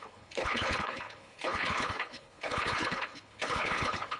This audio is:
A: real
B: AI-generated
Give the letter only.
B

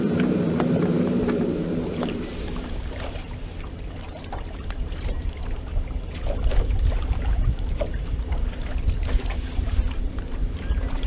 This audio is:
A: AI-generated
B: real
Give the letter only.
A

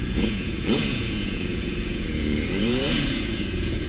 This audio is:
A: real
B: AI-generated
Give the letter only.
B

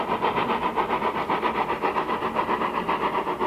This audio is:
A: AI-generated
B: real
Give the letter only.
B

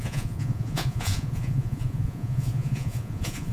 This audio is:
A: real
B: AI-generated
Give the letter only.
B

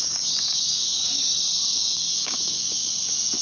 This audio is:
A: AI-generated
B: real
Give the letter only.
A